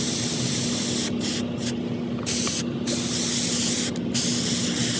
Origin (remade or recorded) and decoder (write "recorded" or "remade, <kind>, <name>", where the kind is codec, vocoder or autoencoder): recorded